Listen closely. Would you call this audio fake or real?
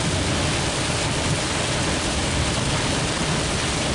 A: real